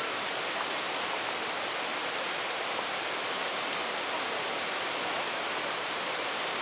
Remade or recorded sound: recorded